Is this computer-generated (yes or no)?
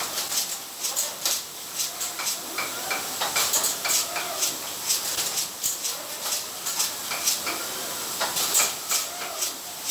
no